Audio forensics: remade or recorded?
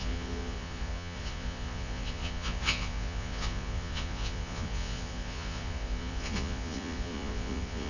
remade